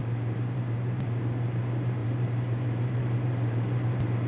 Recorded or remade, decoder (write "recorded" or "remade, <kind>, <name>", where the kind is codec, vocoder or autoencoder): remade, vocoder, BigVGAN v2